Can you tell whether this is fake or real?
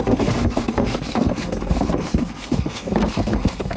fake